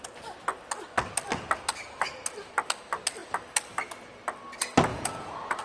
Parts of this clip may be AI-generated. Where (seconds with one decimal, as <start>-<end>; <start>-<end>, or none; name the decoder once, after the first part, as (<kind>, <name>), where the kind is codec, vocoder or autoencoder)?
4.9-5.6 (vocoder, Vocos)